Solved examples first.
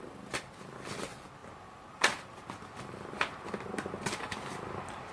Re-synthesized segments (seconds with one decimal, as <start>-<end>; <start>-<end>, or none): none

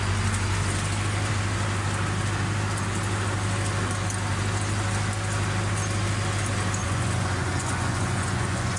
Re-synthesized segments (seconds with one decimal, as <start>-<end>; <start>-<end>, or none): 6.8-8.8

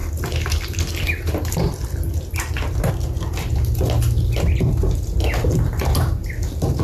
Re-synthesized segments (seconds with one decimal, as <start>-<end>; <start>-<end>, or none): none

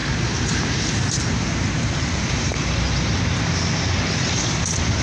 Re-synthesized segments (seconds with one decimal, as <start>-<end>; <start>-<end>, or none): 0.0-2.5; 4.3-5.0

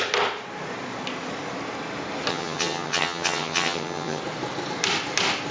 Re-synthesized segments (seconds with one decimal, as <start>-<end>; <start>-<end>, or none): 2.3-4.2